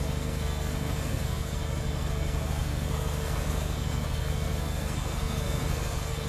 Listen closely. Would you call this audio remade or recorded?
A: remade